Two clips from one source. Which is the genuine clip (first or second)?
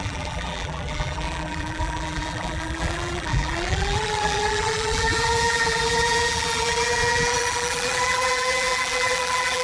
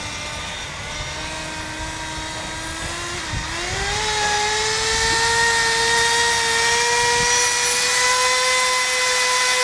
second